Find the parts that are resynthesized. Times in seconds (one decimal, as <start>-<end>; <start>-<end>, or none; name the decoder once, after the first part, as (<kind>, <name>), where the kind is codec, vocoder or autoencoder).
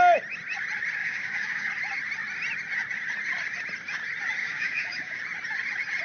1.0-1.7 (codec, DAC); 4.4-5.2